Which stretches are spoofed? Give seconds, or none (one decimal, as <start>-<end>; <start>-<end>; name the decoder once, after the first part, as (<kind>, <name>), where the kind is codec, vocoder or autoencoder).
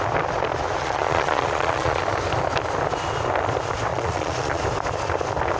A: 0.8-2.0 (vocoder, Vocos); 3.9-4.6